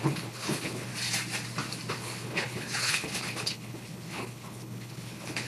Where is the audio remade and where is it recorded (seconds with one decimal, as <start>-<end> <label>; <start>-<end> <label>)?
0.0-0.9 remade; 0.9-1.9 recorded; 1.9-5.5 remade